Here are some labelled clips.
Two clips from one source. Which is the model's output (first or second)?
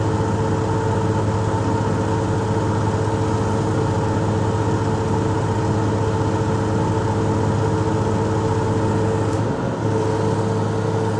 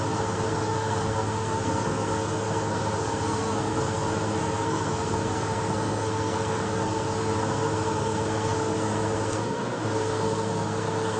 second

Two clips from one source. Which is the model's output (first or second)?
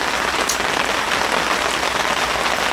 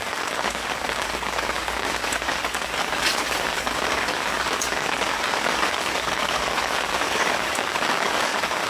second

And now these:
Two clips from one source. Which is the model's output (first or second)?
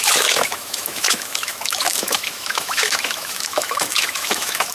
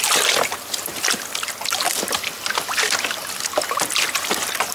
first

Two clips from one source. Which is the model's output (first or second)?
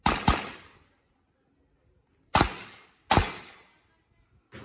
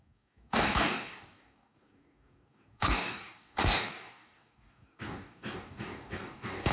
second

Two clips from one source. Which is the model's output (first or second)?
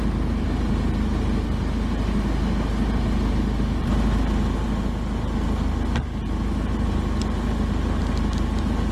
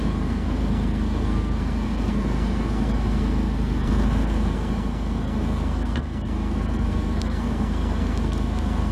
second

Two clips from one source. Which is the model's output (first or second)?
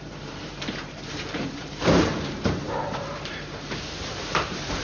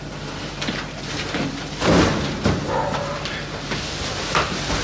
first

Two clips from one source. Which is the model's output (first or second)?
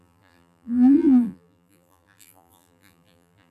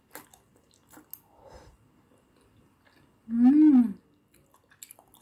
first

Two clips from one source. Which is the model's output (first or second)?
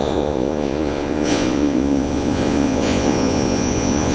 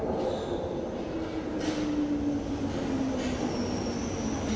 first